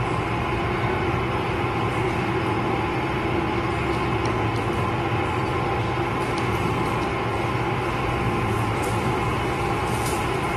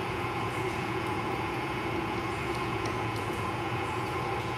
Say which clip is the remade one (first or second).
second